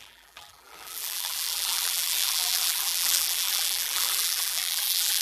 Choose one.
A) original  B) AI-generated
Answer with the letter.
B